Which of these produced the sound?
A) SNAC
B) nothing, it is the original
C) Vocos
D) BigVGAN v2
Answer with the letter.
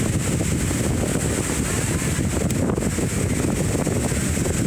B